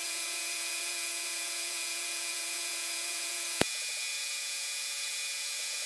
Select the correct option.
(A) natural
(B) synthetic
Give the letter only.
B